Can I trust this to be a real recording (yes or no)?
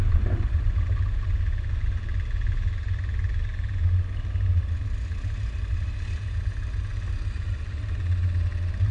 yes